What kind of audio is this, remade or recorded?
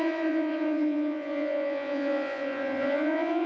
remade